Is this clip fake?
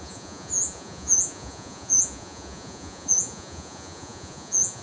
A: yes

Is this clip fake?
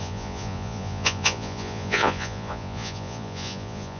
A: yes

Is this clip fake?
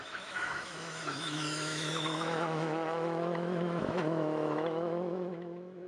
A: yes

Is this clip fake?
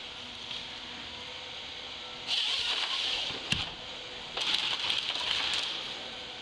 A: no